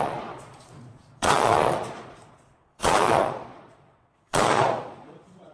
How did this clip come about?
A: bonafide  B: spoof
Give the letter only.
B